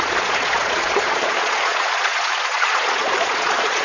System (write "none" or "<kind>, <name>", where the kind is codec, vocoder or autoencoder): vocoder, Vocos